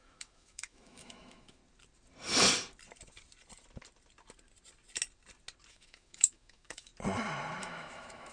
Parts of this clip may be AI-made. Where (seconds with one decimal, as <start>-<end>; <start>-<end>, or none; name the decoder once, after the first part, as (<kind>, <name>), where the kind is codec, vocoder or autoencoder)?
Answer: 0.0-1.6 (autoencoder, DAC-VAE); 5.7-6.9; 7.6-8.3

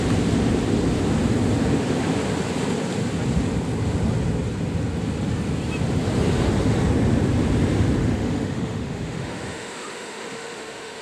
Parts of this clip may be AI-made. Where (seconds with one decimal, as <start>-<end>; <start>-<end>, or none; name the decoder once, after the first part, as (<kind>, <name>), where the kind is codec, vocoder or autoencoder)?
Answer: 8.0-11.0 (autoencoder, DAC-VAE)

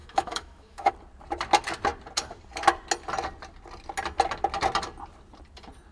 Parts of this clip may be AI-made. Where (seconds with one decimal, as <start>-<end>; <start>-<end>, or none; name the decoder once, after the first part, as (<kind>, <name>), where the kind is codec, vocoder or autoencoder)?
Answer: 0.0-0.9 (autoencoder, DAC-VAE)

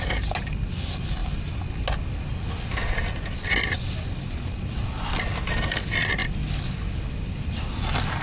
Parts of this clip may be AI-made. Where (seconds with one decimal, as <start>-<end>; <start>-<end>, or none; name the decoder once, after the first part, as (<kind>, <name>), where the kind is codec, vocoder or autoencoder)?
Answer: none